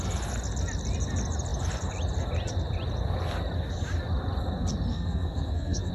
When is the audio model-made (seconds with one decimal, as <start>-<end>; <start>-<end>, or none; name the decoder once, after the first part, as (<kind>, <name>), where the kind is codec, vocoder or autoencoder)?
4.9-5.9 (codec, SNAC)